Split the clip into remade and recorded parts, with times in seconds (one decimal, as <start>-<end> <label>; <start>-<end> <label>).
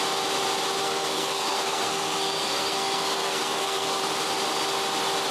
0.0-0.8 recorded; 0.8-4.0 remade; 4.0-5.3 recorded